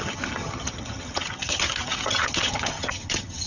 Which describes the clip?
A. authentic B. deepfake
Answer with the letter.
B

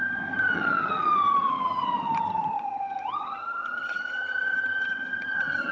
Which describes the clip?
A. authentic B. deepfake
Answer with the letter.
B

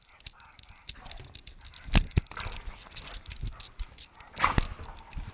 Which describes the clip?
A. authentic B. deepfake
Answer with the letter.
A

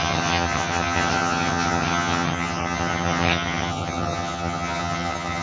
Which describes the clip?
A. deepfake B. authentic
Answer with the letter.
A